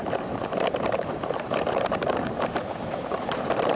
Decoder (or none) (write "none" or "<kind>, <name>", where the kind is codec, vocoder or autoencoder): vocoder, BigVGAN v2